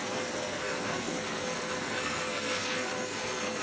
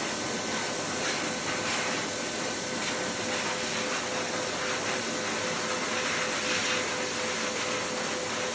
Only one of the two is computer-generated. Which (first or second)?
first